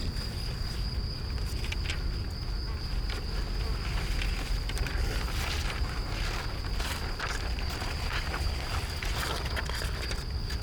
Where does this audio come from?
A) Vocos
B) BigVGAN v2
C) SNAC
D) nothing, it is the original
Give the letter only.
D